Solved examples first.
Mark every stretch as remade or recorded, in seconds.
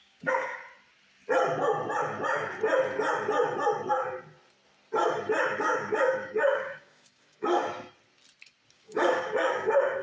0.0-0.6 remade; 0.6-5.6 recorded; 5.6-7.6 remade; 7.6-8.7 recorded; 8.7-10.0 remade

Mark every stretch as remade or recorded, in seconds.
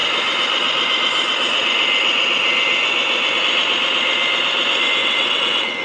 0.0-5.0 recorded; 5.0-5.8 remade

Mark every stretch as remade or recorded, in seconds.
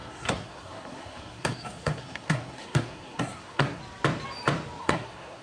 0.0-3.8 remade; 3.8-4.8 recorded; 4.8-5.4 remade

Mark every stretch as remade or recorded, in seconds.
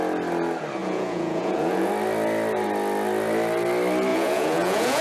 0.0-0.8 recorded; 0.8-1.9 remade; 1.9-4.1 recorded; 4.1-5.0 remade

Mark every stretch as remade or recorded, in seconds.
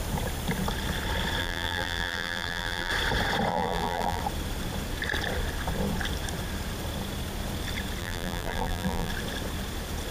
0.0-1.4 recorded; 1.4-2.9 remade; 2.9-3.5 recorded; 3.5-4.2 remade; 4.2-8.0 recorded; 8.0-9.1 remade; 9.1-10.1 recorded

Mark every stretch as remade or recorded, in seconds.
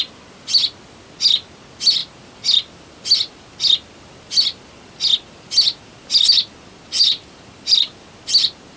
0.0-8.8 recorded